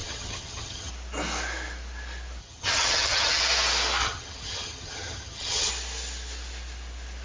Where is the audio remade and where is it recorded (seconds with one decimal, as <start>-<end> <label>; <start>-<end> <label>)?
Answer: 0.0-0.9 remade; 0.9-2.4 recorded; 2.4-3.4 remade; 3.4-4.0 recorded; 4.0-5.7 remade; 5.7-7.2 recorded